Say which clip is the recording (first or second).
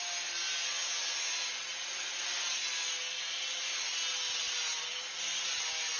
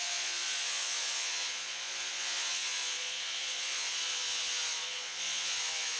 first